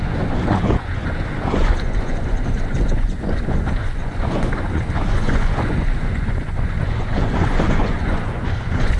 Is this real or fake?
fake